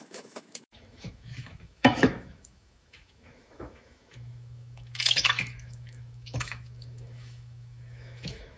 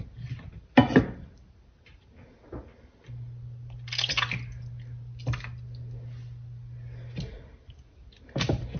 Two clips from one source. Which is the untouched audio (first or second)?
second